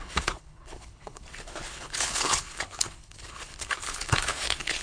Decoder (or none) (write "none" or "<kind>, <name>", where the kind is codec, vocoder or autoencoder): codec, HILCodec